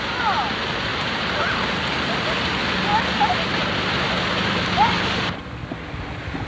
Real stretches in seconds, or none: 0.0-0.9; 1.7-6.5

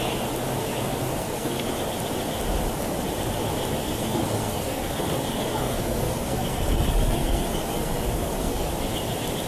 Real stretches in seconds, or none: 0.0-0.6; 1.7-3.8; 8.7-9.5

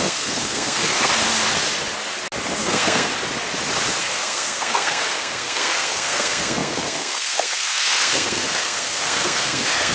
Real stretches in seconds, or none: 1.1-2.6; 3.1-4.0

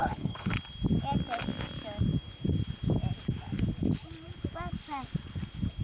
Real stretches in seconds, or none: 0.5-5.8